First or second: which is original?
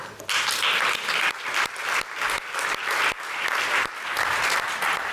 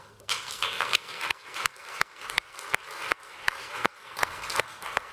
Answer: first